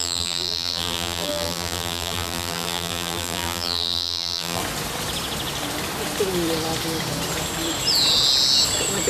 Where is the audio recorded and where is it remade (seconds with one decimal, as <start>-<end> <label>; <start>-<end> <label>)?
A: 0.0-4.6 remade; 4.6-9.1 recorded